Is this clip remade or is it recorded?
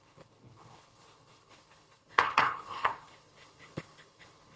remade